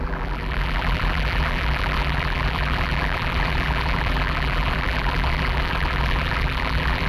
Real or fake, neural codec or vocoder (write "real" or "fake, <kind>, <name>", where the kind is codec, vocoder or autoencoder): fake, vocoder, BigVGAN v2